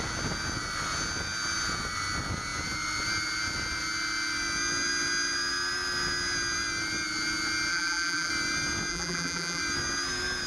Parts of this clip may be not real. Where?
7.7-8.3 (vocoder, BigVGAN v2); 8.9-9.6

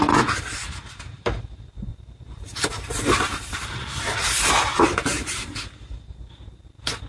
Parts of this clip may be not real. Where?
1.9-5.6 (vocoder, BigVGAN v2)

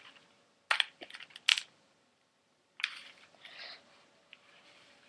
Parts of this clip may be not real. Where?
none

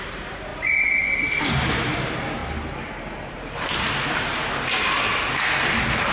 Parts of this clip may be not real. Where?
0.0-0.5 (vocoder, BigVGAN v2); 1.4-2.4; 3.3-4.4

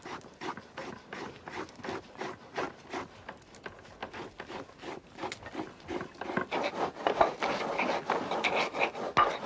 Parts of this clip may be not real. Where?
0.8-1.5 (vocoder, BigVGAN v2)

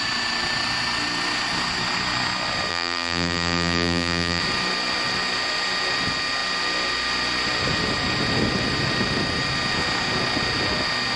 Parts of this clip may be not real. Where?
2.7-4.4 (vocoder, BigVGAN v2)

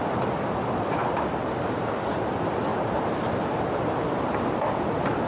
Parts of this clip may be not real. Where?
2.7-5.3 (vocoder, BigVGAN v2)